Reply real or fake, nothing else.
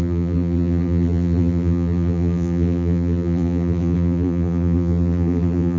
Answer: fake